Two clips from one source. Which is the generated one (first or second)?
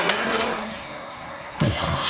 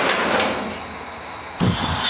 first